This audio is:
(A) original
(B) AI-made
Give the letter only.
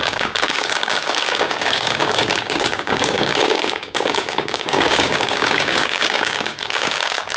B